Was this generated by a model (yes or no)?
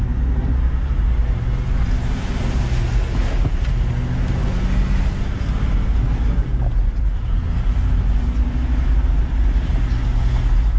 no